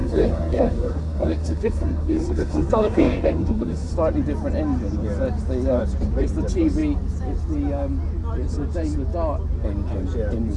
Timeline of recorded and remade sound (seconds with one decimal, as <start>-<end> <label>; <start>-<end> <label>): 0.0-3.9 remade; 3.9-10.6 recorded